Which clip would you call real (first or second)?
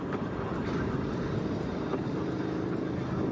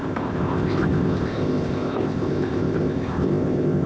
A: first